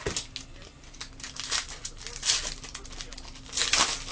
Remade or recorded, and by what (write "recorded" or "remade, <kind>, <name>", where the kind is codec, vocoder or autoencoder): recorded